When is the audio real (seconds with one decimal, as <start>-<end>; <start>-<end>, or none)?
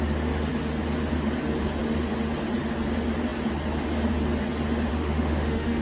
0.0-4.9